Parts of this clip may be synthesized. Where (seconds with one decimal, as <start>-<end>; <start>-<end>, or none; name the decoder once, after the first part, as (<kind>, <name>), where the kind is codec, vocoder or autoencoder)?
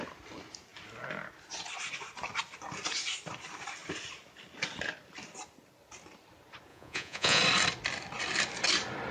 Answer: 6.7-7.4 (vocoder, Vocos)